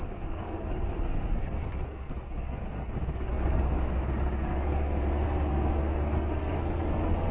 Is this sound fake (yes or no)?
yes